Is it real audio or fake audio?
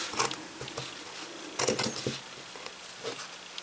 real